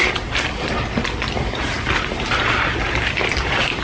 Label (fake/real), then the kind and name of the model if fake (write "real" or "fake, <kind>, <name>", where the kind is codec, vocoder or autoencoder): fake, vocoder, BigVGAN v2